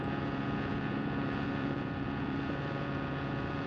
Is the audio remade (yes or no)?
yes